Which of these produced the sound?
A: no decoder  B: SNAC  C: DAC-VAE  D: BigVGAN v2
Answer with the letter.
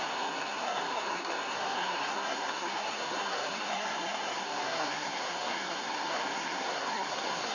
B